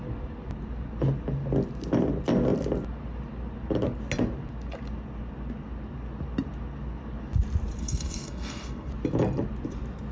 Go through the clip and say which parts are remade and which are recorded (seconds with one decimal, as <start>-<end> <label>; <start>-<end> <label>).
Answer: 0.0-7.8 recorded; 7.8-8.9 remade; 8.9-10.1 recorded